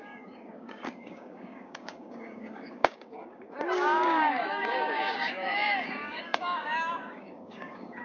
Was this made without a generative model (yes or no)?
no